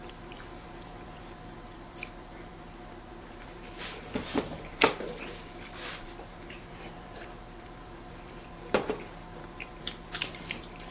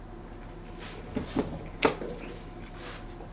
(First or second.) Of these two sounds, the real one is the second